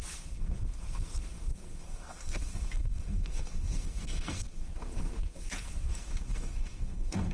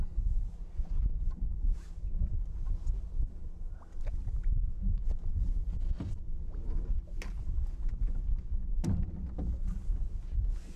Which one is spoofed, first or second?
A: first